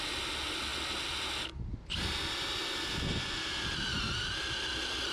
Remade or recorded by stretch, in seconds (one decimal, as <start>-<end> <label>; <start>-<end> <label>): 0.0-5.1 recorded